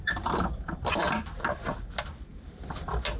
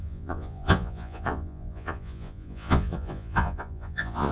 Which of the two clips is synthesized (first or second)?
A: second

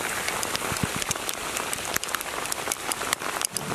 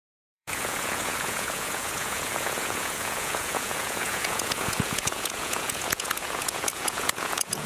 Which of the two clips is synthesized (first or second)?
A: second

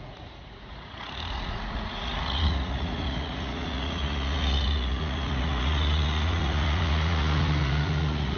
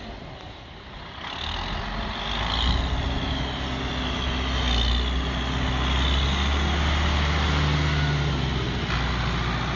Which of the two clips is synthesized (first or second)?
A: first